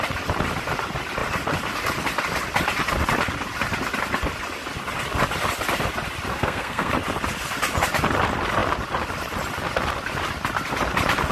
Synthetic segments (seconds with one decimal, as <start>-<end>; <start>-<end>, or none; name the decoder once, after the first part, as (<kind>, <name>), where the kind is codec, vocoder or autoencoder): 6.3-6.9 (codec, SNAC)